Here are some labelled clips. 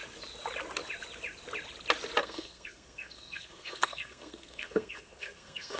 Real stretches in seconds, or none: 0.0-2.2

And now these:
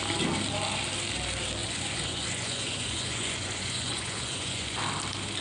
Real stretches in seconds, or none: 0.0-1.6; 4.8-5.4